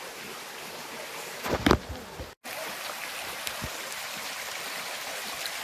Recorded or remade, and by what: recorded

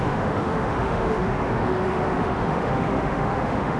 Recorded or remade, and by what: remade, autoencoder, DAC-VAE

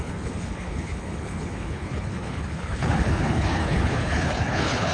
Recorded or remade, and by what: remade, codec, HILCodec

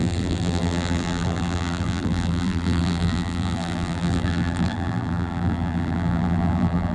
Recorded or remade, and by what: remade, vocoder, BigVGAN v2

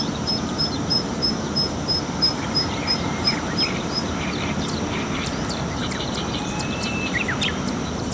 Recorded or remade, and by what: remade, vocoder, BigVGAN v2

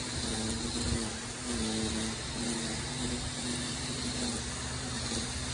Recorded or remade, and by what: recorded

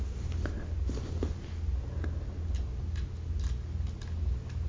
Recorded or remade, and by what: recorded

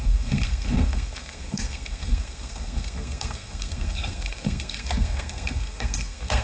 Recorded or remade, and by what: remade, codec, SNAC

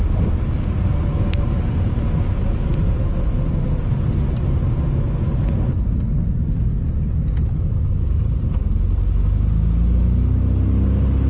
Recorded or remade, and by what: recorded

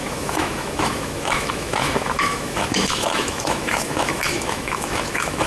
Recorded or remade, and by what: remade, autoencoder, DAC-VAE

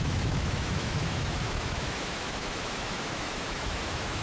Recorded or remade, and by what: remade, autoencoder, DAC-VAE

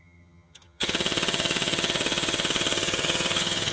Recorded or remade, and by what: remade, vocoder, HiFi-GAN